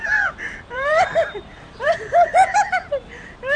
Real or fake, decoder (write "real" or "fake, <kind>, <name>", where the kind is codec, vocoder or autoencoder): fake, vocoder, BigVGAN v2